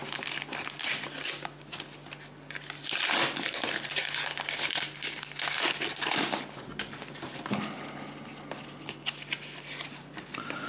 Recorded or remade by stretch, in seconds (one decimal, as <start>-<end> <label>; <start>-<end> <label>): 0.0-10.7 recorded